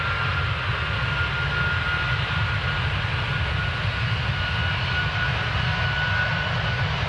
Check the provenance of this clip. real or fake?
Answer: real